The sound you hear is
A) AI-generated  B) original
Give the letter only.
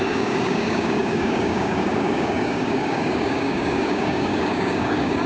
A